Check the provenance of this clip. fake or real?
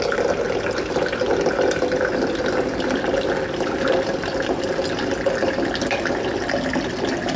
real